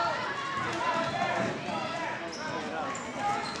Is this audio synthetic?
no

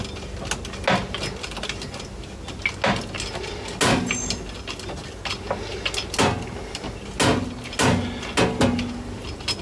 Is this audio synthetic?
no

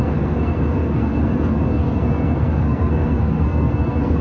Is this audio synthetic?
yes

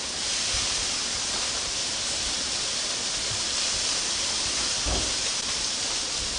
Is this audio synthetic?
yes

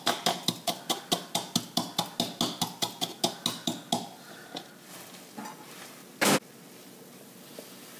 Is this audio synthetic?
no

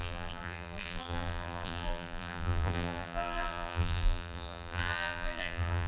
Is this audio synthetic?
yes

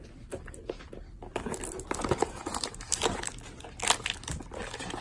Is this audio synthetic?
no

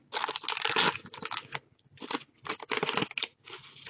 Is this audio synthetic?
no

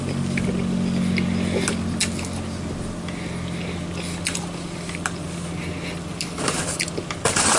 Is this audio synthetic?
no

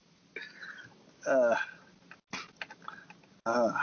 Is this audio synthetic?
no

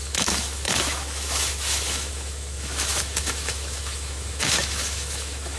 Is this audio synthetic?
yes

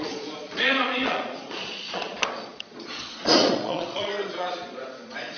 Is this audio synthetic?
yes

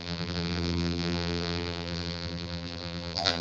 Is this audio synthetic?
yes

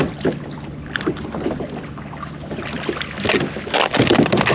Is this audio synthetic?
no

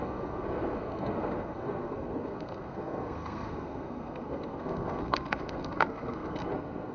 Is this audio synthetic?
yes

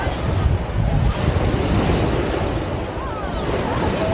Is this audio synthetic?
no